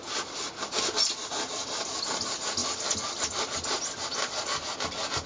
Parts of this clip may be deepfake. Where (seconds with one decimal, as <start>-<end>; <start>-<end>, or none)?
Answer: none